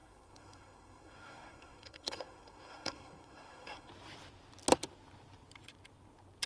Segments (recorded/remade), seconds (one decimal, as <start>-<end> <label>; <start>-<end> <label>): 0.0-3.9 remade; 3.9-6.5 recorded